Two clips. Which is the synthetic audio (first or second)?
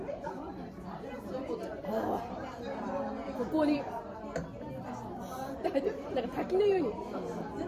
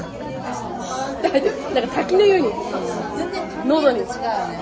first